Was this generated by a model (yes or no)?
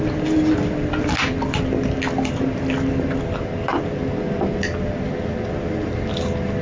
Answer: no